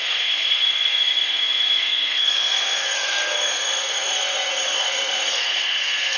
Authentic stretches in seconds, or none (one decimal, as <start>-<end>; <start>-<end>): none